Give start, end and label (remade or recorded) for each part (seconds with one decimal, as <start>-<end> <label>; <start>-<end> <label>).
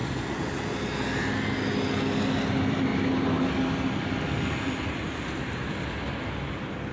0.0-0.5 remade; 0.5-6.9 recorded